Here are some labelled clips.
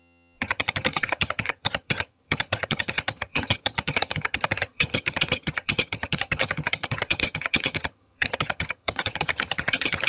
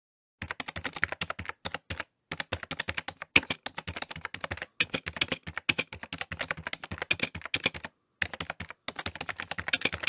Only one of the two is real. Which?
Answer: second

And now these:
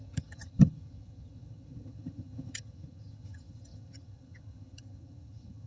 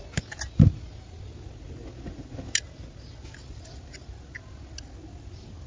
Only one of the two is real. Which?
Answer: second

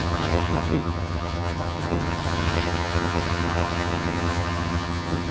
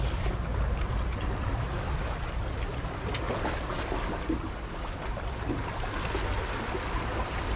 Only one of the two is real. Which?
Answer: second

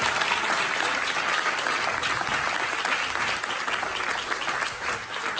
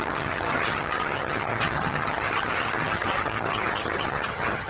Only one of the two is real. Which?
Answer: first